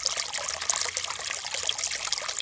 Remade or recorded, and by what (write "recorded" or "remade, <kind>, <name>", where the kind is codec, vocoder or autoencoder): recorded